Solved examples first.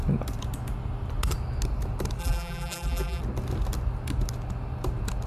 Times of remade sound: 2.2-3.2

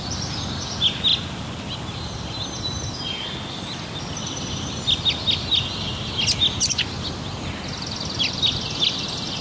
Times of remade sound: none

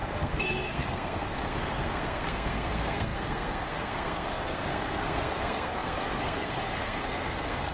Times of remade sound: 0.0-7.7

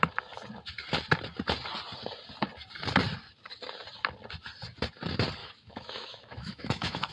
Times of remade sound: 5.4-7.1

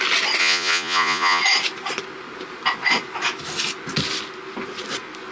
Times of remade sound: 0.4-1.4

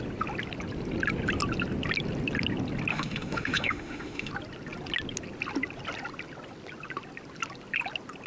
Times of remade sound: 2.9-4.3

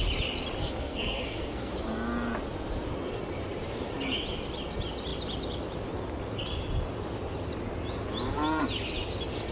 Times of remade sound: 0.6-1.7

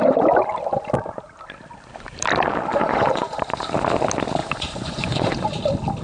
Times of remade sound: 2.7-3.4; 4.4-5.6